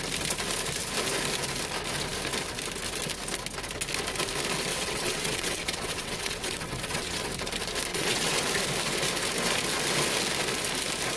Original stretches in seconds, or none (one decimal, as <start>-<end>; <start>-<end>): 0.0-4.7; 7.3-7.9; 8.4-11.2